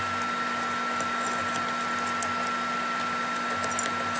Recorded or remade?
recorded